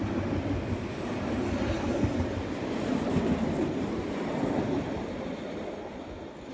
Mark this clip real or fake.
real